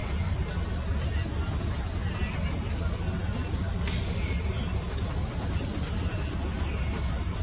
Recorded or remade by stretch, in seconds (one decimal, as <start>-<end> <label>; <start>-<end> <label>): 0.0-7.4 recorded